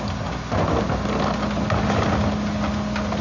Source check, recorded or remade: recorded